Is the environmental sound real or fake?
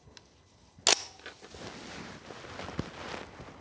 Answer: real